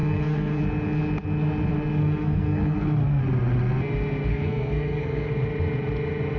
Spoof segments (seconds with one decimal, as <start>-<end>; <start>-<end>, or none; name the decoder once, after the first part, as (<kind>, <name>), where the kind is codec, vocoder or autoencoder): 0.0-0.6 (codec, SNAC); 2.0-3.2; 4.3-5.3